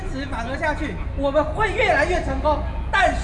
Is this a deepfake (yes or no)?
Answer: no